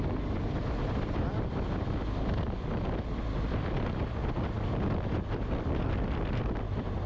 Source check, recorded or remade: recorded